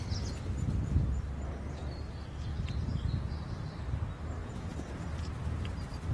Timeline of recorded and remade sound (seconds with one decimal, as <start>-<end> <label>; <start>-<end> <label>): 0.0-4.4 recorded; 4.4-5.1 remade; 5.1-6.1 recorded

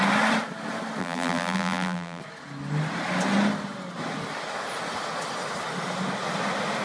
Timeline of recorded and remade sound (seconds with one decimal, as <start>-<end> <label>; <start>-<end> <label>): 0.0-1.0 recorded; 1.0-2.2 remade; 2.2-6.8 recorded